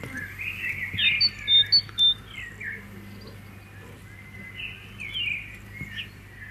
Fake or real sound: real